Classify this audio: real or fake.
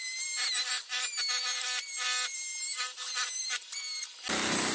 real